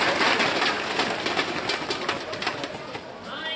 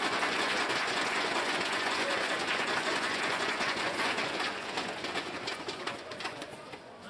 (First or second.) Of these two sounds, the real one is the first